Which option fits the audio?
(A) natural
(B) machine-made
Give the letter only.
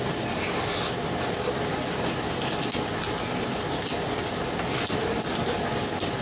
A